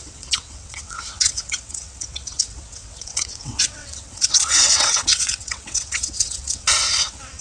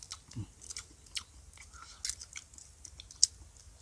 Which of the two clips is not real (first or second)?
first